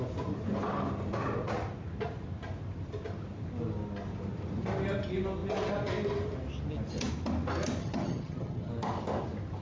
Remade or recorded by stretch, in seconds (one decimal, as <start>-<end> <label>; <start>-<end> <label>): 0.0-7.8 recorded; 7.8-8.7 remade; 8.7-9.6 recorded